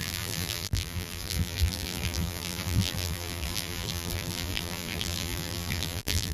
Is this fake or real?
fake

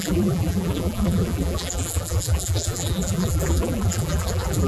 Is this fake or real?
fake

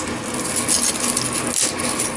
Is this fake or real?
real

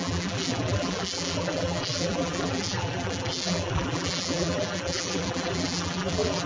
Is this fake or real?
fake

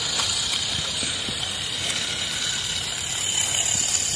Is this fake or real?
real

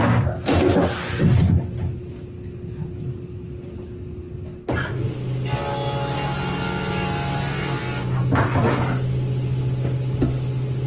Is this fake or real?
real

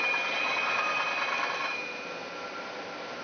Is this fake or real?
real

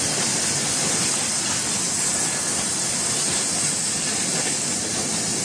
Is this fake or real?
real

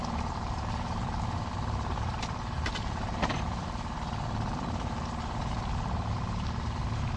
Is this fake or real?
fake